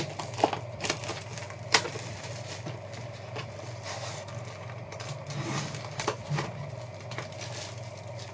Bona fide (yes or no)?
yes